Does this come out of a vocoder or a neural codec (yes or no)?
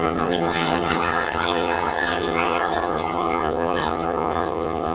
yes